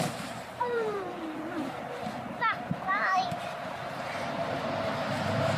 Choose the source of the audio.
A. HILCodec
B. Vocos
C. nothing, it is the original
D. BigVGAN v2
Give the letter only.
D